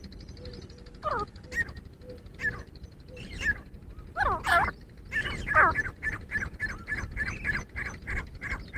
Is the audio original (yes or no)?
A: yes